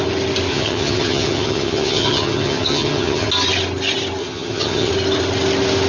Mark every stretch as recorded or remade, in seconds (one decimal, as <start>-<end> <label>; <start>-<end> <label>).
0.0-0.5 recorded; 0.5-3.3 remade; 3.3-4.2 recorded; 4.2-4.9 remade; 4.9-5.9 recorded